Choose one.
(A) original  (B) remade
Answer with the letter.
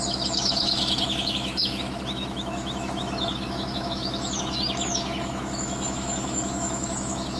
B